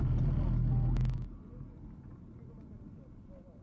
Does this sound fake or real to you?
real